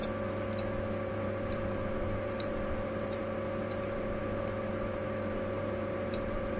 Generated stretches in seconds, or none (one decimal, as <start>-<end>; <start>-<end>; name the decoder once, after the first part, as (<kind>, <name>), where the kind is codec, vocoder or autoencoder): 1.1-3.2 (vocoder, BigVGAN v2); 3.7-6.6